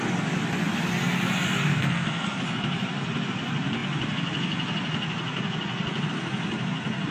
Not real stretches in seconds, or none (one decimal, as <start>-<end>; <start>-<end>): 1.7-2.4